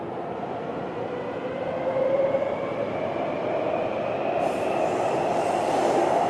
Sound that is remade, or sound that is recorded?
recorded